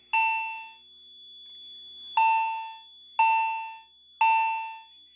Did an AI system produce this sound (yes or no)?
no